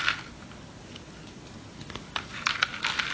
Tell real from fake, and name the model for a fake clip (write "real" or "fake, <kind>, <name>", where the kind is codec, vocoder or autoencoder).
real